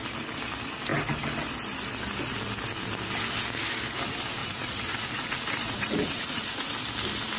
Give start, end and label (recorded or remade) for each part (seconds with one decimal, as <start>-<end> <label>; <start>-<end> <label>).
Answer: 0.0-4.4 recorded; 4.4-6.7 remade; 6.7-7.4 recorded